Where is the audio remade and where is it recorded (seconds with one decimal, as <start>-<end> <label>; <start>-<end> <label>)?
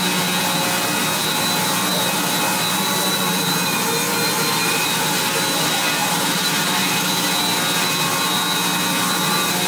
0.0-6.0 recorded; 6.0-6.9 remade; 6.9-9.7 recorded